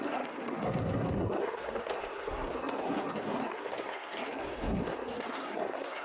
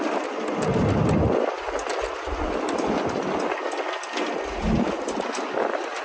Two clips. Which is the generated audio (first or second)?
first